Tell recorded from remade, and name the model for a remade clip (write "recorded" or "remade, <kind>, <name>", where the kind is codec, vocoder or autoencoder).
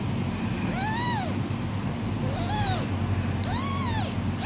recorded